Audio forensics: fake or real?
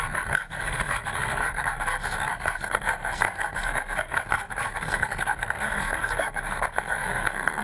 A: fake